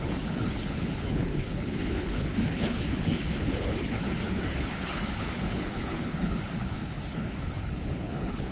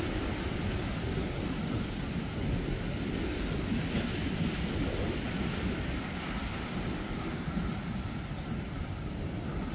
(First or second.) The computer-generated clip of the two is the first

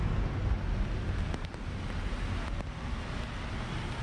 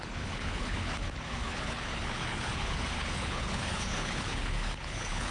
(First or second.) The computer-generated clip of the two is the second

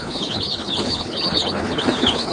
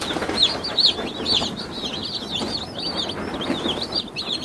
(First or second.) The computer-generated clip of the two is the first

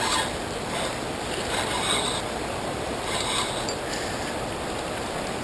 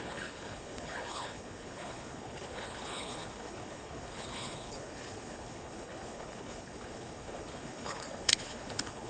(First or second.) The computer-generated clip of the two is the second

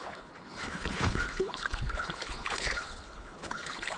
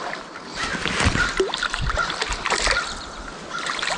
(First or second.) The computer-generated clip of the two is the first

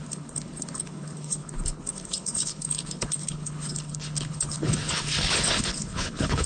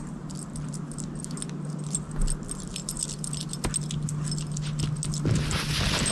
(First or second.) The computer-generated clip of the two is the first